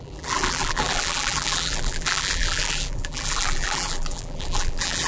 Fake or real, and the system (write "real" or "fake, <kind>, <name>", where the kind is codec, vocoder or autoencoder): fake, vocoder, BigVGAN v2